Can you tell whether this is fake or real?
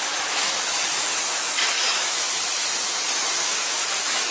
fake